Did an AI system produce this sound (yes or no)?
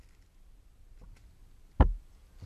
no